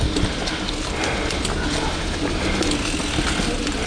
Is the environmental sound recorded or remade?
recorded